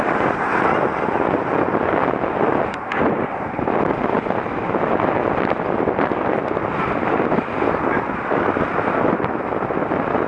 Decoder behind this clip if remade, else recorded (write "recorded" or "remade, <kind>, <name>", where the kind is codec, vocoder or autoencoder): recorded